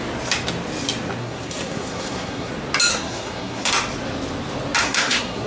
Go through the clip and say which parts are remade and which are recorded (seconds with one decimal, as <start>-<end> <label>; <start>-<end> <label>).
0.0-1.2 recorded; 1.2-2.5 remade; 2.5-2.9 recorded; 2.9-3.7 remade; 3.7-4.8 recorded; 4.8-5.5 remade